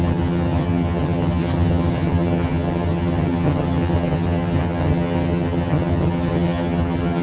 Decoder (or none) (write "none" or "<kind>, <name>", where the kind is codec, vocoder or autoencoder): vocoder, HiFi-GAN